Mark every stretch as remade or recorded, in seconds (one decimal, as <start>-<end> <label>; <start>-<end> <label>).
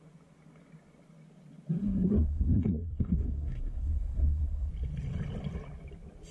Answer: 0.0-1.8 recorded; 1.8-4.7 remade; 4.7-6.3 recorded